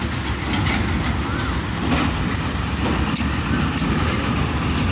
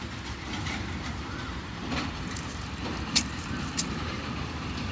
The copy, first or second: second